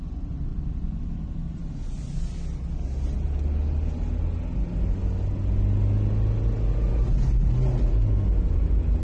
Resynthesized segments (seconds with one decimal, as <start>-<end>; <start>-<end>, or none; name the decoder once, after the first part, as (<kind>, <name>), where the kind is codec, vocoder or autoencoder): none